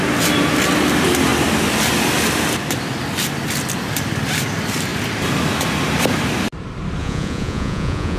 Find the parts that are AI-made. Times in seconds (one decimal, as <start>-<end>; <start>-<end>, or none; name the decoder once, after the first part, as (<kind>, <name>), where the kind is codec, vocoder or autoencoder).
7.0-8.2 (vocoder, Vocos)